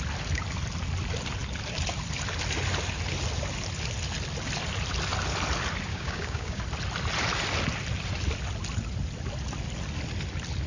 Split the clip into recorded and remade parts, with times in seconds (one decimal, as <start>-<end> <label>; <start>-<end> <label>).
0.0-5.9 recorded; 5.9-6.6 remade; 6.6-10.7 recorded